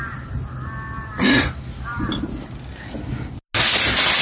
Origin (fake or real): real